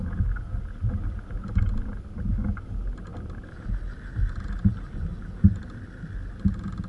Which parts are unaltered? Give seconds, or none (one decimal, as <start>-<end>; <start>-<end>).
0.0-6.9